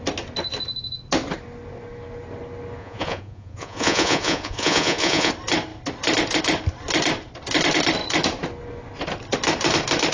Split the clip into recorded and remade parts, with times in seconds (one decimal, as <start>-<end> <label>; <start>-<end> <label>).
0.0-2.8 recorded; 2.8-5.3 remade; 5.3-10.1 recorded